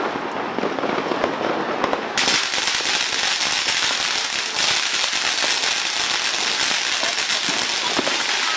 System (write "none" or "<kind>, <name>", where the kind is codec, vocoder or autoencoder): none